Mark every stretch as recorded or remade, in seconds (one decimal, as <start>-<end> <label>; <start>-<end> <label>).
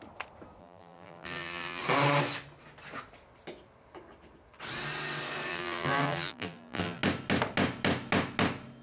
0.0-0.6 recorded; 0.6-1.8 remade; 1.8-5.5 recorded; 5.5-7.0 remade; 7.0-8.8 recorded